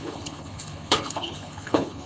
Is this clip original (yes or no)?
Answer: no